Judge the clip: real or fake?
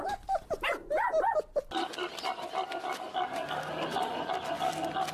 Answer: real